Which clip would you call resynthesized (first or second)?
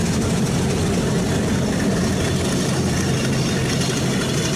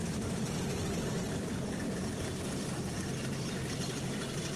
second